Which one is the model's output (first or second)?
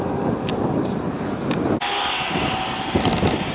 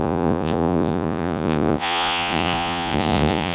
second